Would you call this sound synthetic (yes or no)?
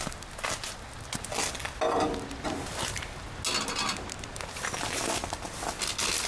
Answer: no